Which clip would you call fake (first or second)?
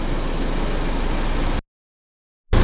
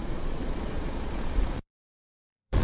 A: second